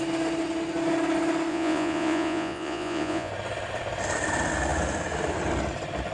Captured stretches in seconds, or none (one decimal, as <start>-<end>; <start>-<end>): 0.0-1.5; 3.3-6.1